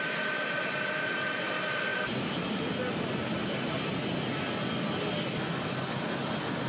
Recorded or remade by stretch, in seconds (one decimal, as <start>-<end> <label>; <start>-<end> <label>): 0.0-6.7 recorded